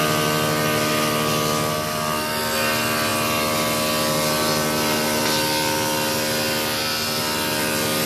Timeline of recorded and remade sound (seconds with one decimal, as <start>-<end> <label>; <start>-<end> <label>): 0.0-8.1 recorded